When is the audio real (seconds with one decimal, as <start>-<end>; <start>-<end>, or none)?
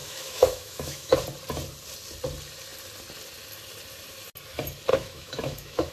1.1-4.9